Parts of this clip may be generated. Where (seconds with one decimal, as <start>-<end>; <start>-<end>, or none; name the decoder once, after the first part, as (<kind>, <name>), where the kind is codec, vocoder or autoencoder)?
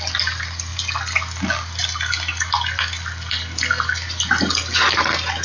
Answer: none